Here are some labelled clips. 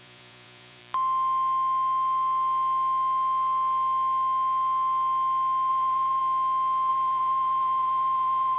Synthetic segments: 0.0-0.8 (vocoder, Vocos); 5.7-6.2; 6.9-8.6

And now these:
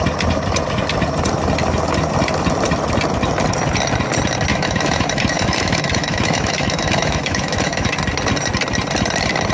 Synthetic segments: 4.5-7.9 (autoencoder, DAC-VAE)

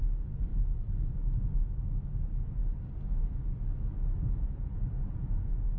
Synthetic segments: none

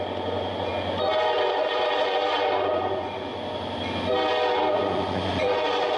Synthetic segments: 0.0-0.7 (vocoder, Vocos); 1.5-3.3; 4.7-6.0

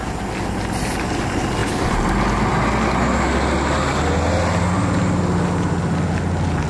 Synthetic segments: 1.6-2.1 (vocoder, BigVGAN v2)

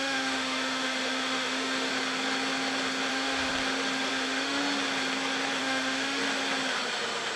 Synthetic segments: 0.0-1.9 (autoencoder, DAC-VAE); 3.1-3.5; 4.1-4.6; 5.6-6.2

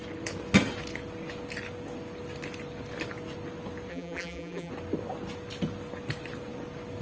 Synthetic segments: 3.9-4.7 (vocoder, BigVGAN v2)

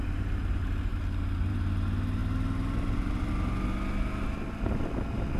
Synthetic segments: none